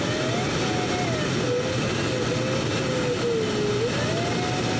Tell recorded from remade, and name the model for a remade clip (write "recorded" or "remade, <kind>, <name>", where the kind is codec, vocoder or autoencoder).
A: recorded